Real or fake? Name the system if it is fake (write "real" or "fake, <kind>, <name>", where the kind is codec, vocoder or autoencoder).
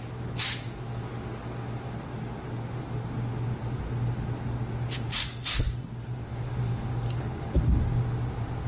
real